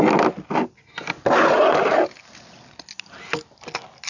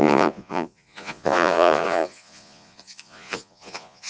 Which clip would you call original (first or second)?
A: first